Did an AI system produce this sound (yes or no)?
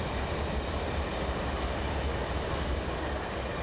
no